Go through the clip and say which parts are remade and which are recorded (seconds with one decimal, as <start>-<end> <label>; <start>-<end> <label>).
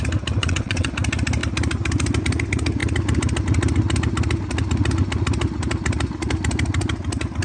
0.0-0.4 recorded; 0.4-0.9 remade; 0.9-7.4 recorded